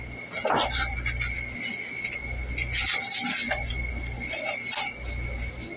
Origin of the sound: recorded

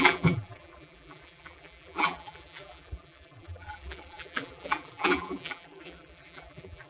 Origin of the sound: remade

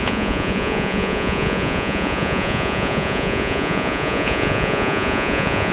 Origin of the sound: remade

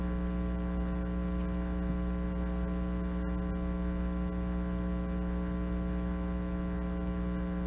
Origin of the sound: recorded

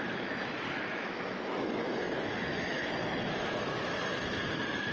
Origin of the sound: remade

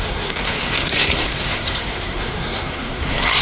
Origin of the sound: remade